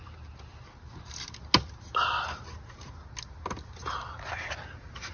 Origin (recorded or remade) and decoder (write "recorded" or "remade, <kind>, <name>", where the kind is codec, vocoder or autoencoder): recorded